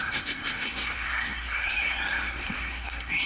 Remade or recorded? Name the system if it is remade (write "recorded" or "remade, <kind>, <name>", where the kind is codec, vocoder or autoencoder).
remade, codec, SNAC